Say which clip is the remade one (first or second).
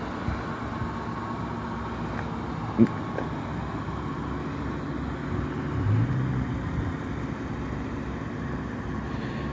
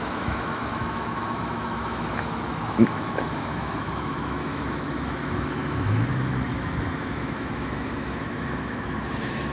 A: second